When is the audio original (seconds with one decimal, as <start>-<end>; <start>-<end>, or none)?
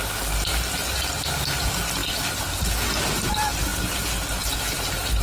0.0-5.2